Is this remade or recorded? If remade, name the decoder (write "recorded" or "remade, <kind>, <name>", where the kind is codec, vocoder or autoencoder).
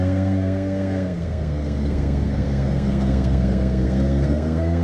remade, codec, SNAC